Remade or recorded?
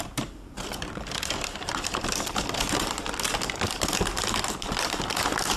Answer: remade